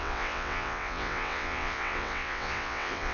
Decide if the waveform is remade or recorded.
remade